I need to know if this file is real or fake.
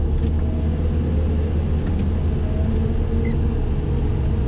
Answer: real